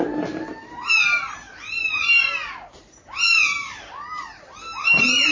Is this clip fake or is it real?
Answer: real